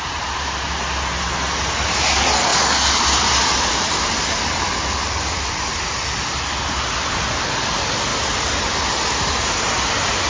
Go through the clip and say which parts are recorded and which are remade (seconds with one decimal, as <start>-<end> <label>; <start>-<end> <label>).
0.0-10.3 recorded